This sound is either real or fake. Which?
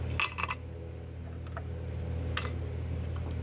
real